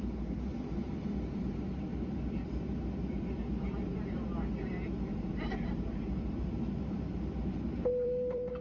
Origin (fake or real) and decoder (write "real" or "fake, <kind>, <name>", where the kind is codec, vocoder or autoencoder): fake, vocoder, BigVGAN v2